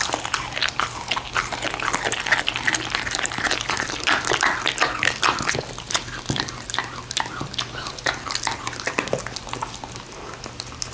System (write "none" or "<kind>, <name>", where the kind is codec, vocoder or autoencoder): none